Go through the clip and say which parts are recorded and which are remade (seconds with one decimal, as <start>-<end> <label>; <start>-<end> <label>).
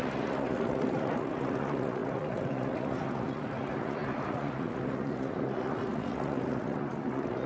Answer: 0.0-7.5 remade